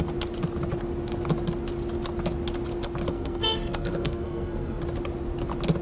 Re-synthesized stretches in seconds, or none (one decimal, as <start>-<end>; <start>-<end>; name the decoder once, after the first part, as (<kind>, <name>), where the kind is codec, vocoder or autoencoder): 3.1-4.8 (codec, SNAC)